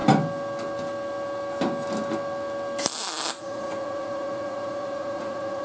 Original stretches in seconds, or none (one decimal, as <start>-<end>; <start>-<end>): 0.0-3.4